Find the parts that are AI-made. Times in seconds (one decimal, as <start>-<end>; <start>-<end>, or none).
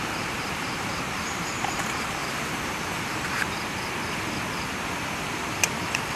0.0-2.2